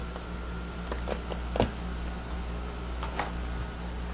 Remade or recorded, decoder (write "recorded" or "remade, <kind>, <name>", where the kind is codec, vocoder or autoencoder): recorded